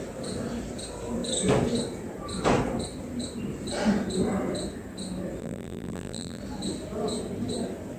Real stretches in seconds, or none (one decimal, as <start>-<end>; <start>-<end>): 0.0-5.4; 6.4-8.0